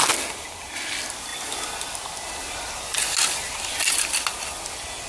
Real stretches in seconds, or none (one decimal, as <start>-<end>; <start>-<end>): 0.0-5.1